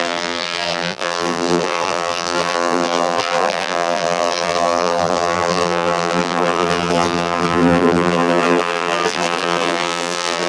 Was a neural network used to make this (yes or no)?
yes